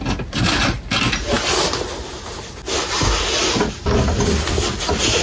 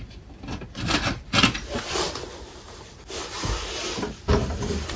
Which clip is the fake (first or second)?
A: second